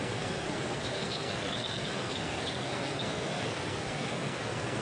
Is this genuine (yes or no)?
no